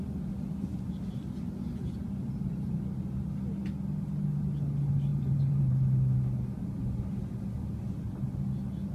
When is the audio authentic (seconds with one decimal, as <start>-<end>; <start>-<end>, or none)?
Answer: 0.0-5.1; 5.7-8.9